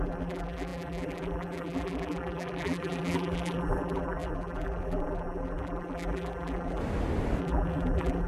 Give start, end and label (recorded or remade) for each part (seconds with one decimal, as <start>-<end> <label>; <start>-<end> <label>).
0.0-6.8 remade; 6.8-7.4 recorded; 7.4-8.3 remade